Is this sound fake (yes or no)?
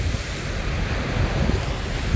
no